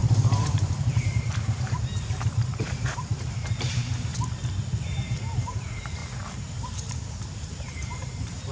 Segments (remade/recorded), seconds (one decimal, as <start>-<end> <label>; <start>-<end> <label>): 0.0-4.1 remade; 4.1-5.4 recorded; 5.4-6.0 remade; 6.0-6.6 recorded; 6.6-8.5 remade